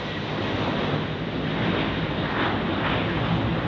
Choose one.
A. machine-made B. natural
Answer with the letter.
B